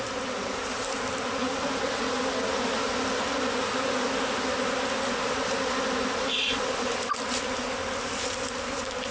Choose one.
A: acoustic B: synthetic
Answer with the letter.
A